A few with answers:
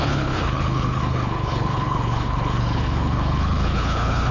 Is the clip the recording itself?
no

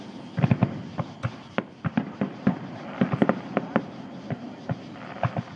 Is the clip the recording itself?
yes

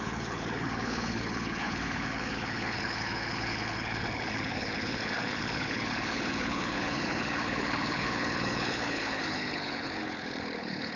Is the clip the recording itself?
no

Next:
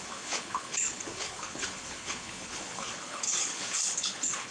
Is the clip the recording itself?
no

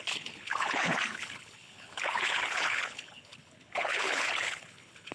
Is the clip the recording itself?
no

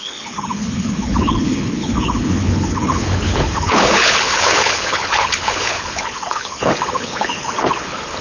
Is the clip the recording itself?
no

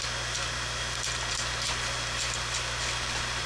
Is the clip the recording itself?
yes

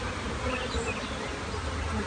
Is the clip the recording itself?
yes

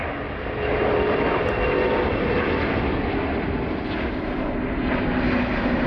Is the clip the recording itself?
yes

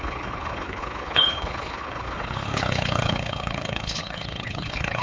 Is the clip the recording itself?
no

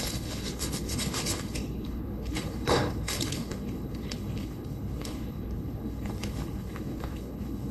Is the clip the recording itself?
no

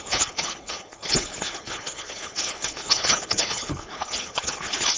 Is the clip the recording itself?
no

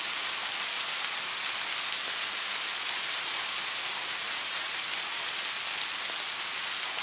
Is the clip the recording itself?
yes